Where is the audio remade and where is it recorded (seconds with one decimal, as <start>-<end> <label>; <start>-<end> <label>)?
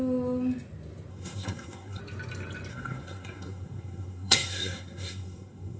0.0-1.1 recorded; 1.1-2.0 remade; 2.0-2.7 recorded; 2.7-5.8 remade